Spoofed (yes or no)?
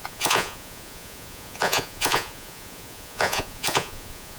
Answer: yes